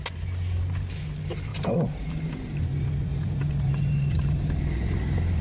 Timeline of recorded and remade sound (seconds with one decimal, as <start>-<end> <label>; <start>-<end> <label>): 0.0-1.5 recorded; 1.5-2.6 remade; 2.6-3.1 recorded; 3.1-4.6 remade; 4.6-5.4 recorded